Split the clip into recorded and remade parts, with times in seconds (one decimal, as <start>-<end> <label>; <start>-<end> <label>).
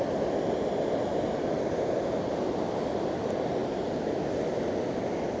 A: 0.0-3.6 recorded; 3.6-4.6 remade; 4.6-5.4 recorded